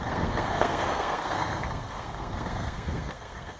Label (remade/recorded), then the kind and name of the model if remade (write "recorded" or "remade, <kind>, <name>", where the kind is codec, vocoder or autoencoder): remade, codec, SNAC